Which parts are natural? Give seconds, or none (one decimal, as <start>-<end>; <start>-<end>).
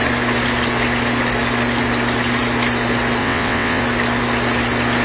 0.0-3.2; 3.8-5.0